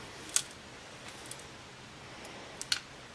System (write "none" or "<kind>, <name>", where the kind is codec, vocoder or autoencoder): none